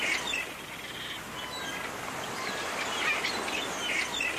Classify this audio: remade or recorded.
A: recorded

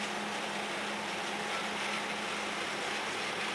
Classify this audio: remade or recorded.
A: recorded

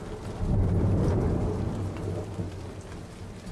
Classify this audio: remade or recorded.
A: recorded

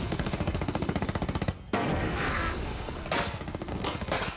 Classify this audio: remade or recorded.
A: remade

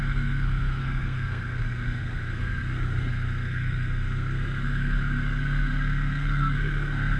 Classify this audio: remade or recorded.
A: remade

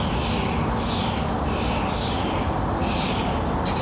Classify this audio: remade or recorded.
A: recorded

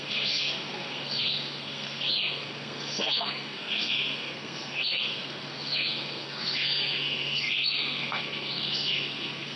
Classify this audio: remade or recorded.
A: remade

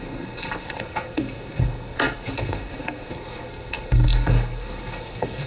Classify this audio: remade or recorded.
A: remade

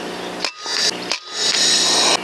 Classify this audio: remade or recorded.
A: recorded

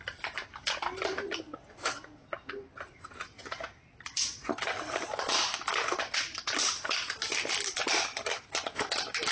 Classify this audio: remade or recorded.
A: recorded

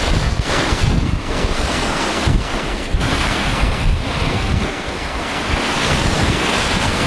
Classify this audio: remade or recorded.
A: remade